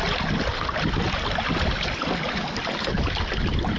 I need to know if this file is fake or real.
real